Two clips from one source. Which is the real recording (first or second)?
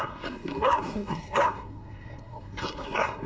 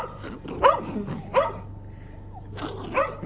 second